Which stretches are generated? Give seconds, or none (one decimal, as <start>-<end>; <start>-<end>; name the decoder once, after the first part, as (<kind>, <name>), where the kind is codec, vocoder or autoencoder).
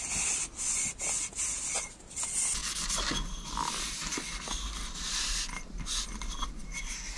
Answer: none